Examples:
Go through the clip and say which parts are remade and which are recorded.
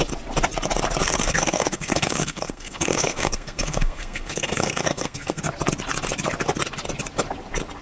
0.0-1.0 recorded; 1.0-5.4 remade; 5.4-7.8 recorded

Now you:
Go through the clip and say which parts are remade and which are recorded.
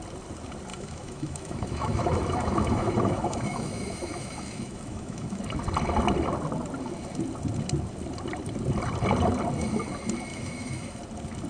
0.0-0.7 recorded; 0.7-5.4 remade; 5.4-10.3 recorded; 10.3-11.0 remade; 11.0-11.5 recorded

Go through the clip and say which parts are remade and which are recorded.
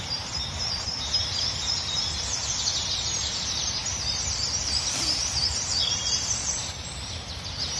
0.0-1.2 remade; 1.2-2.5 recorded; 2.5-3.8 remade; 3.8-4.6 recorded; 4.6-7.8 remade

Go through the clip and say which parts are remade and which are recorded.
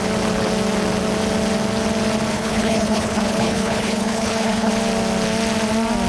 0.0-2.3 recorded; 2.3-4.7 remade; 4.7-6.1 recorded